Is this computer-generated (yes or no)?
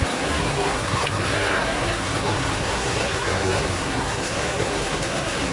yes